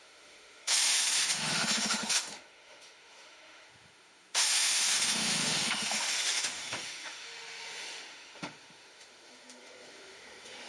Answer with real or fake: fake